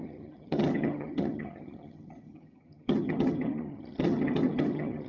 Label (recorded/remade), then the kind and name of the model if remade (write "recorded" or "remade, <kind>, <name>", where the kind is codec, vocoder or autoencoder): remade, vocoder, HiFi-GAN